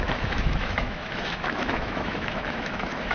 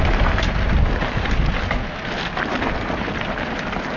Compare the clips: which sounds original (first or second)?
second